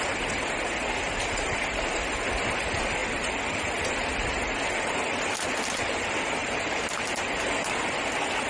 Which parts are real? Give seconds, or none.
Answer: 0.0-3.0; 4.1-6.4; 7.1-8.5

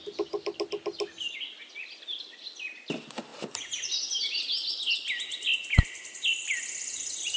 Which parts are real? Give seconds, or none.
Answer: 0.0-7.4

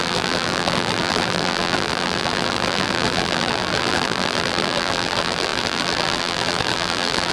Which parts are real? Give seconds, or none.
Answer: none